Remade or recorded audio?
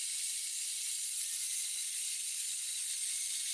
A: remade